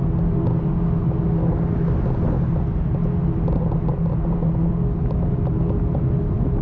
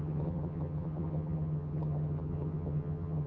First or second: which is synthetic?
second